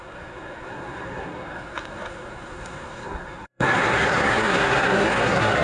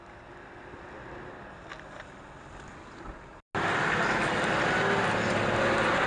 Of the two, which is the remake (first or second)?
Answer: first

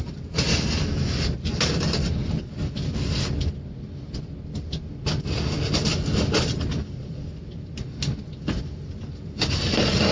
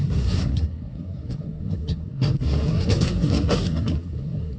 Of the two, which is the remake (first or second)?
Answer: second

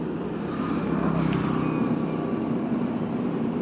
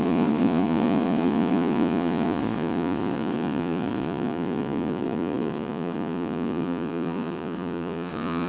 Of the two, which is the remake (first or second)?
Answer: second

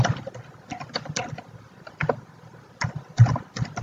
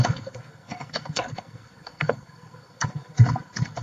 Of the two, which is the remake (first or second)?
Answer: second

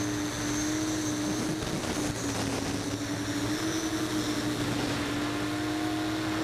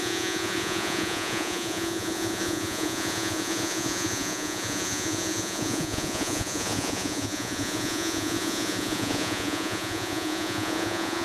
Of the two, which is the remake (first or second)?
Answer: second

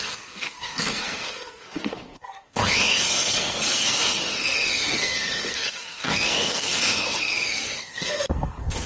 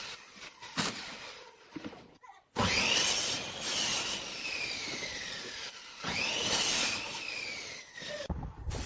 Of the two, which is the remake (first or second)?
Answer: first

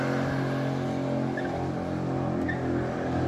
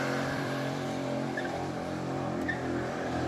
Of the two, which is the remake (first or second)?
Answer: second